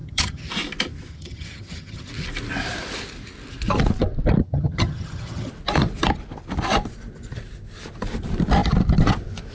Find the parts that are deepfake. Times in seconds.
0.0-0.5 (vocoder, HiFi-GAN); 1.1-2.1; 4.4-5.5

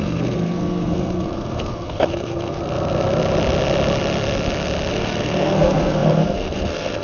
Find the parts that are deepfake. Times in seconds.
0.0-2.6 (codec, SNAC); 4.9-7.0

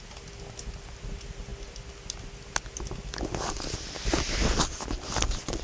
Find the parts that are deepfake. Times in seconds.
none